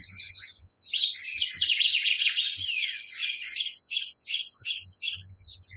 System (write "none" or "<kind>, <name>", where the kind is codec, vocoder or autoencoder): vocoder, Vocos